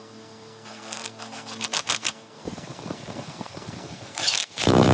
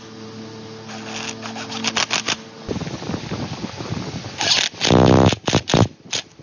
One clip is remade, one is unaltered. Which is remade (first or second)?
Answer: first